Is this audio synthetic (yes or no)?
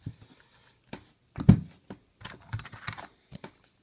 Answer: no